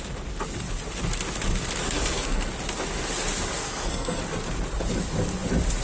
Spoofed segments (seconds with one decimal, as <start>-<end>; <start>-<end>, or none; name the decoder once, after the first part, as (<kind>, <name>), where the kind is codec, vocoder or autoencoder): 1.8-2.5 (codec, SNAC); 3.6-4.2